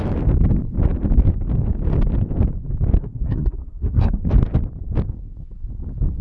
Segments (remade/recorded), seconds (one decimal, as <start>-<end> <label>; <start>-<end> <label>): 0.0-3.0 recorded; 3.0-4.2 remade; 4.2-6.2 recorded